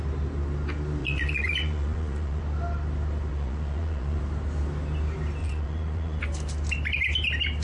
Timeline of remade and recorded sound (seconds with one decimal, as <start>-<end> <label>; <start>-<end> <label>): 0.0-1.0 recorded; 1.0-2.4 remade; 2.4-3.3 recorded; 3.3-4.2 remade; 4.2-5.4 recorded; 5.4-6.2 remade; 6.2-7.6 recorded